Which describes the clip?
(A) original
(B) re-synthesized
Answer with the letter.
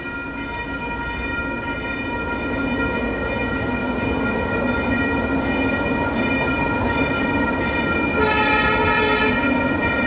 A